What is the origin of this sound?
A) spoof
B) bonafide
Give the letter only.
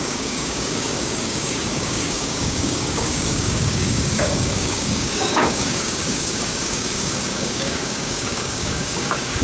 A